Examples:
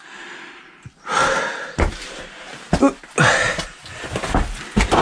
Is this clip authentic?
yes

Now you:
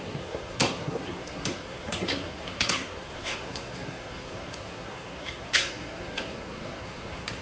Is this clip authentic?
no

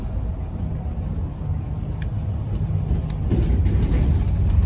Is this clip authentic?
yes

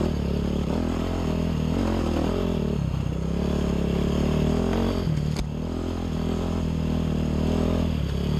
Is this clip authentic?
yes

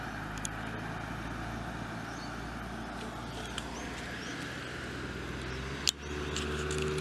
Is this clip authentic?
yes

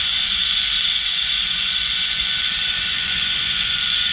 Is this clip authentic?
no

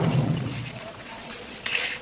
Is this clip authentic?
no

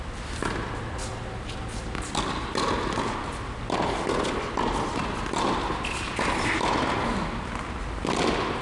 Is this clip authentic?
yes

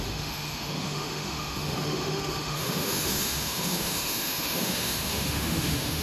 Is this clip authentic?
no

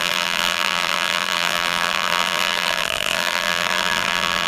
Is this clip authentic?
no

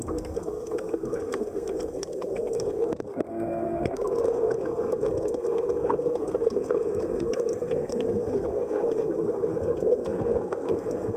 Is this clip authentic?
no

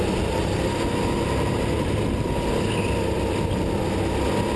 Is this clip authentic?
yes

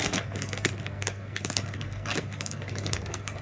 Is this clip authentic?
no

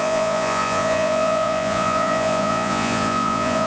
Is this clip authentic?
no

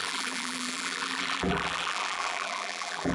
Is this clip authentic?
no